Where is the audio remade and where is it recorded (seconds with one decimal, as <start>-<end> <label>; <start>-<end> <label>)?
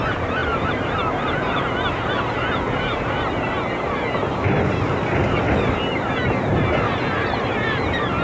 0.0-0.4 recorded; 0.4-2.1 remade; 2.1-8.2 recorded